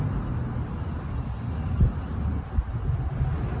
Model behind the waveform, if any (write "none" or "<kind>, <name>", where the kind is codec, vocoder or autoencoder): none